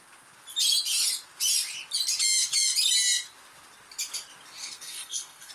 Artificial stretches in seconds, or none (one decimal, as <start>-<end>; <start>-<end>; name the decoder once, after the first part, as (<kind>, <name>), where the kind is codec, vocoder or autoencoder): 4.6-5.5 (codec, SNAC)